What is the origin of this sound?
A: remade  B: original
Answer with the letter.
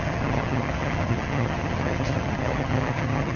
A